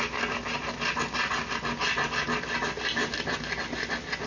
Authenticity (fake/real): real